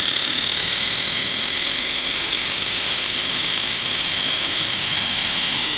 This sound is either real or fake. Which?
fake